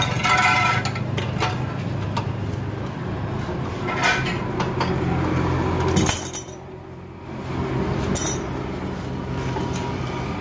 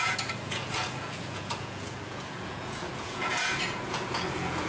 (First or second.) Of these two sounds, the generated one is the second